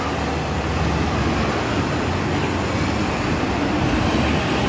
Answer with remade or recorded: recorded